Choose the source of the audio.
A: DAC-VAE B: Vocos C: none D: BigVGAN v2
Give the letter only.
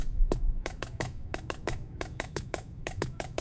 A